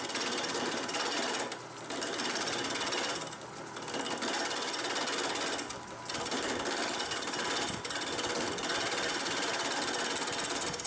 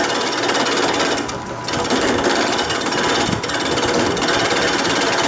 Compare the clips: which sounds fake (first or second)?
first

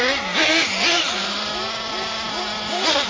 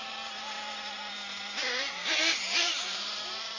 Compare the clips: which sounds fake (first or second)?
second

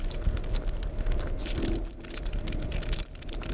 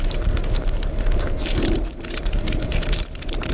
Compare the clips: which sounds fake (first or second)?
second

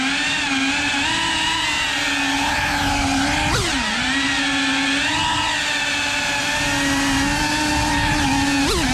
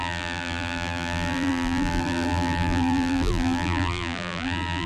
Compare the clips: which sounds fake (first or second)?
second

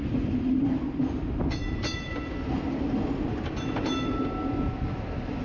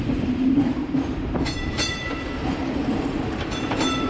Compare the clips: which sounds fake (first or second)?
second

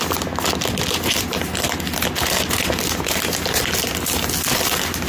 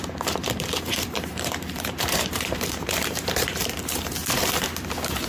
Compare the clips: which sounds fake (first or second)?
second